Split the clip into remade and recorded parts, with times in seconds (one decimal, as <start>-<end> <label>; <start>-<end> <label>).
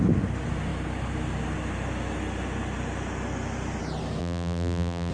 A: 0.0-4.2 recorded; 4.2-5.1 remade